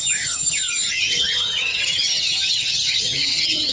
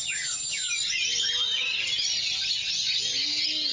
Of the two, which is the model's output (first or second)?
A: first